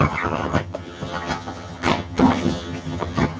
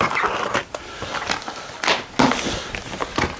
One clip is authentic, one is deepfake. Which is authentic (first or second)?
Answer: second